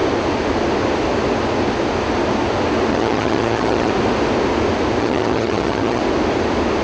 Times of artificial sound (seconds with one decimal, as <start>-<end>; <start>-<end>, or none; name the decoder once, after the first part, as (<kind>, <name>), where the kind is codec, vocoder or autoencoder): 2.9-3.9 (vocoder, HiFi-GAN); 5.0-6.0